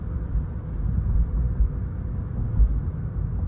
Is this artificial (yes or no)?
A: yes